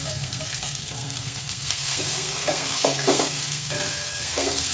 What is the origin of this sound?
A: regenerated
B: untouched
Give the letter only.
A